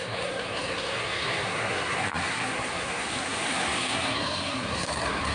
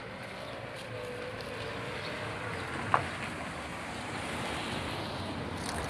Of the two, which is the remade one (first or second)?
first